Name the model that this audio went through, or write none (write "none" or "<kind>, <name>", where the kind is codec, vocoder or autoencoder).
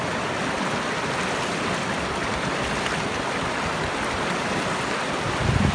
none